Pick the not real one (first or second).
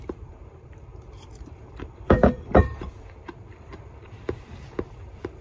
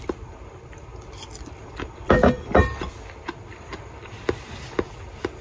first